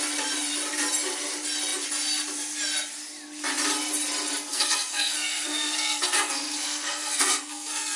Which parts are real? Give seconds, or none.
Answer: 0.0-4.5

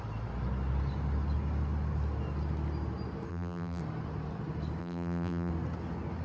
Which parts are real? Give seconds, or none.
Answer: 0.0-3.3; 3.8-4.8; 5.5-6.2

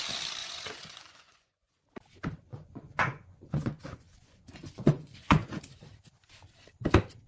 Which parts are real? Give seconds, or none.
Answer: 0.0-0.4; 1.7-2.5; 5.6-7.3

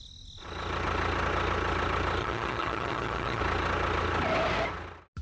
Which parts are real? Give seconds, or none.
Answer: 0.0-2.2; 3.4-5.2

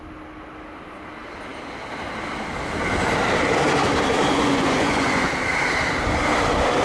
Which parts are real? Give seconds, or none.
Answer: 0.0-4.3; 5.3-6.8

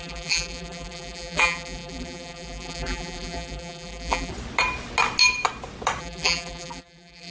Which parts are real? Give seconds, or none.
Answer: 4.3-6.0

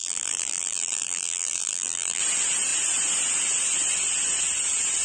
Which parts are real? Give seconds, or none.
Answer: 2.2-5.0

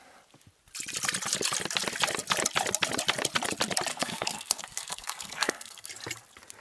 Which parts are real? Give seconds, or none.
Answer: 0.0-3.9; 5.9-6.6